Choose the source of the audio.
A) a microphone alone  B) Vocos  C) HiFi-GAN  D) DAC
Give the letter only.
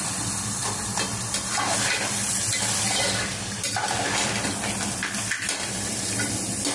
A